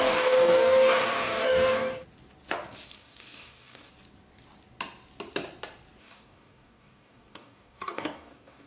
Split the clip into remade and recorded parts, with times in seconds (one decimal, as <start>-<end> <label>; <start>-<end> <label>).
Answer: 0.0-2.0 remade; 2.0-2.9 recorded; 2.9-3.9 remade; 3.9-6.0 recorded; 6.0-8.7 remade